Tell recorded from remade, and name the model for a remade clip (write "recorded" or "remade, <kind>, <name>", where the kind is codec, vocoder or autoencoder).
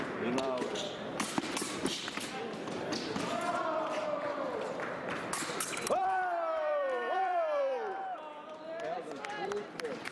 remade, vocoder, BigVGAN v2